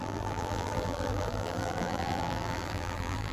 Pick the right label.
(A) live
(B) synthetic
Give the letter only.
B